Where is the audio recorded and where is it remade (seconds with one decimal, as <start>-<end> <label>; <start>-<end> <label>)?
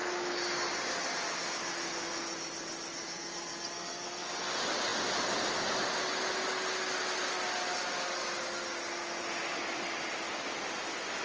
0.0-11.2 recorded